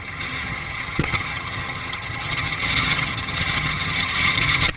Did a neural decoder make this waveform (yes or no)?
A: yes